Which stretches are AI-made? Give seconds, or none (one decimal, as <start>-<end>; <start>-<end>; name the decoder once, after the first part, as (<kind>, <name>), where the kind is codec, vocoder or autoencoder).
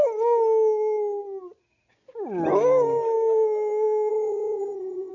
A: 4.1-5.1 (vocoder, HiFi-GAN)